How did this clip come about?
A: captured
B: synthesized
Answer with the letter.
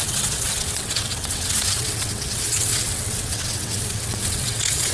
B